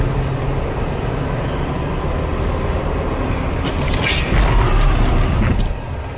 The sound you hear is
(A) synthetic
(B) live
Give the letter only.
B